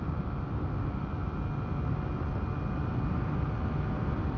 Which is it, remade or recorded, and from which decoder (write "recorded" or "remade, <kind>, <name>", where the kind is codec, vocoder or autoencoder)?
recorded